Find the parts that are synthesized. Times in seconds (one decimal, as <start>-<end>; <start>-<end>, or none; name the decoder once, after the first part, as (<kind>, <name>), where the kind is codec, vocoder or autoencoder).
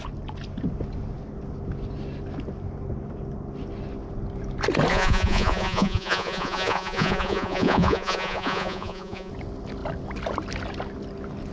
4.9-9.3 (vocoder, Vocos)